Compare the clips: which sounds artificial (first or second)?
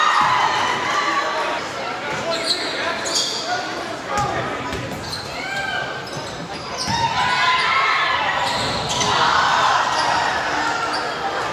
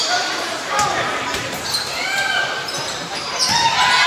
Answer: second